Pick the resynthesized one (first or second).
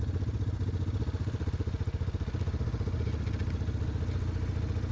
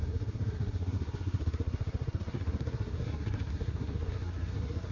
second